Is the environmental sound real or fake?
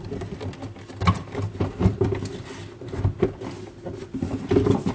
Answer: real